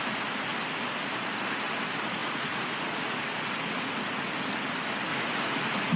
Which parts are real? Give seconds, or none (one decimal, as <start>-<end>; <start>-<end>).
0.0-2.2; 3.2-5.1